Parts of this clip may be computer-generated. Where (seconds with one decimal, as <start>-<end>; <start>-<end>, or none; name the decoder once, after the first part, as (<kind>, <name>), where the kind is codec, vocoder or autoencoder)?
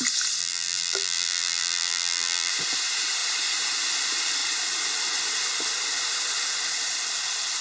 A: 0.4-2.5 (vocoder, BigVGAN v2)